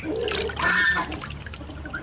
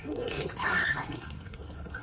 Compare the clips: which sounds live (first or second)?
first